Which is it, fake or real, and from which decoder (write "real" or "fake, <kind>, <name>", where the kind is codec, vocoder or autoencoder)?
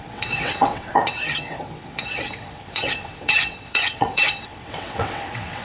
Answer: fake, vocoder, WaveNeXt